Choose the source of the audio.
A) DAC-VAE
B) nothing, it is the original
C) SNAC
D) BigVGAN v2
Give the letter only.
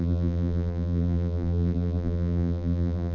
D